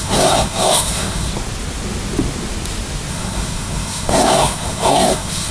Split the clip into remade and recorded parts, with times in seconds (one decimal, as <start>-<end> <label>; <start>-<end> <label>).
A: 0.0-1.3 remade; 1.3-3.1 recorded; 3.1-5.5 remade